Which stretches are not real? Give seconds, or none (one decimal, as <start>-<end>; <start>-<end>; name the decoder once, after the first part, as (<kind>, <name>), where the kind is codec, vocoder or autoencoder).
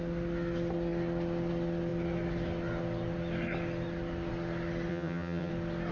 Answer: 4.9-5.5 (vocoder, HiFi-GAN)